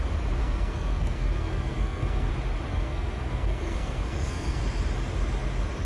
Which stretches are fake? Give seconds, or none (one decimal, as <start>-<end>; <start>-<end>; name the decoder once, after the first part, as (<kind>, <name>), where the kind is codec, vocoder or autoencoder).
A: 0.4-2.3 (codec, SNAC); 2.7-4.6